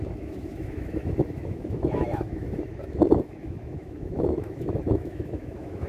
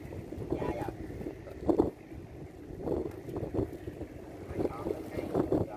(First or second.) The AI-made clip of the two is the first